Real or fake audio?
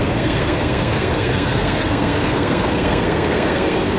fake